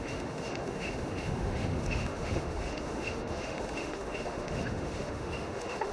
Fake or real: fake